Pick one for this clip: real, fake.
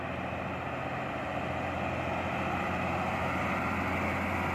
real